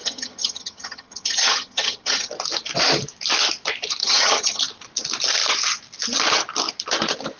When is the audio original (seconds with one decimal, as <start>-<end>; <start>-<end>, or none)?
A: 2.3-4.0; 4.6-7.4